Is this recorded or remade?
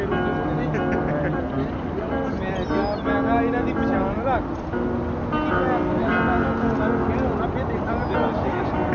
recorded